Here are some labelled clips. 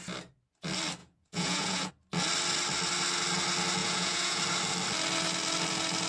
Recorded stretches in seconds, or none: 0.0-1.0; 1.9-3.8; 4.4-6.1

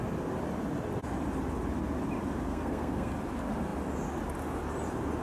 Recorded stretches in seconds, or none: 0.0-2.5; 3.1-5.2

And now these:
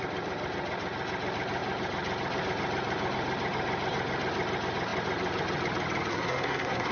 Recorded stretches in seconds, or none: 0.0-6.1

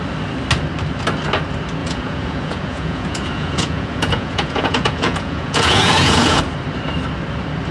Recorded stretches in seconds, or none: 0.0-1.8; 6.4-7.7

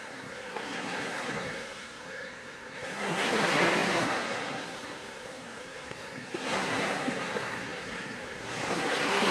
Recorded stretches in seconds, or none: none

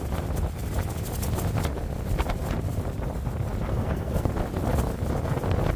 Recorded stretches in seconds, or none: 0.0-3.7; 4.3-5.8